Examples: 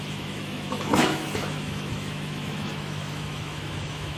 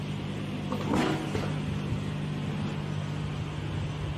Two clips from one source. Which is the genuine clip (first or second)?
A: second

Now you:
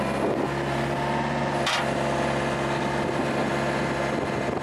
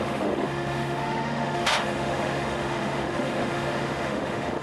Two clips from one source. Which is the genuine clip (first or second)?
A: first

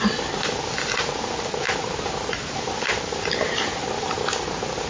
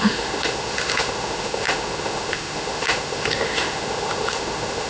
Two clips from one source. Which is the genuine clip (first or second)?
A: first